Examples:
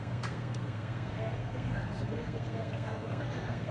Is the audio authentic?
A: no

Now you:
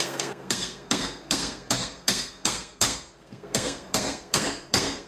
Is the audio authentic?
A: no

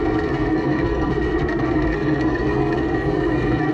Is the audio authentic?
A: no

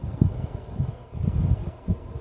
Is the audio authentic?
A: no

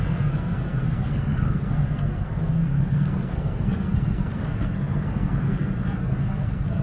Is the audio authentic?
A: no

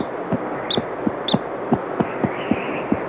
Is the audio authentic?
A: yes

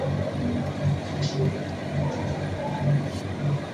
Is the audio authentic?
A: yes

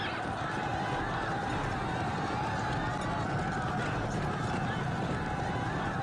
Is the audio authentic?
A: yes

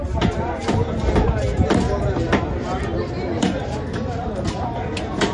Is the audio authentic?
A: yes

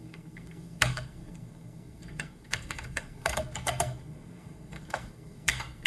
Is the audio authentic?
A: no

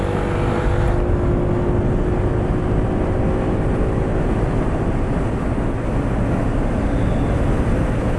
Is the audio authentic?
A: yes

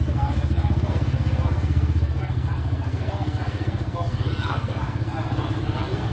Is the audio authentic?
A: no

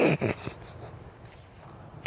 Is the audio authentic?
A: yes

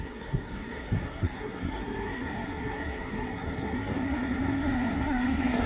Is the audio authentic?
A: no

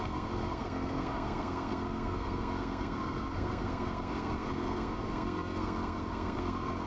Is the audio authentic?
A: no